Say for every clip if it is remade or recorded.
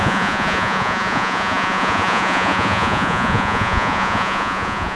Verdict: remade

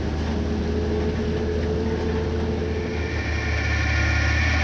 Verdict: recorded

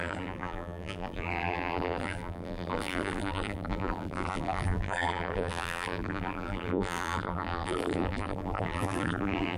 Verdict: remade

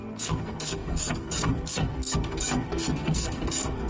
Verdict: remade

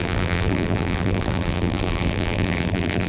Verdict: remade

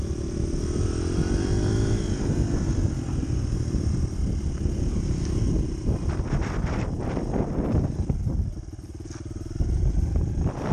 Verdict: remade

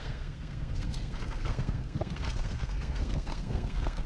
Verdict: remade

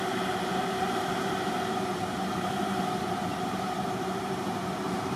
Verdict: remade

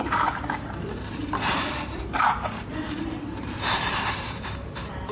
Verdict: remade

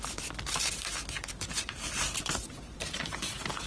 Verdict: remade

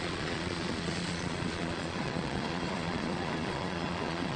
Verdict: remade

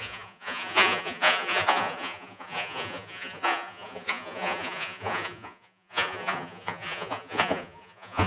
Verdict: remade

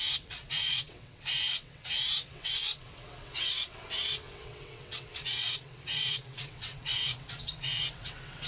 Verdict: remade